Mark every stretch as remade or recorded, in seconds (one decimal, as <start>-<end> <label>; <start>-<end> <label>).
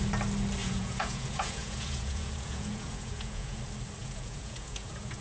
0.0-0.6 recorded; 0.6-3.6 remade; 3.6-4.0 recorded; 4.0-5.2 remade